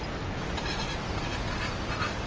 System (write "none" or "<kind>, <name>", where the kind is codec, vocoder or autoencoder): none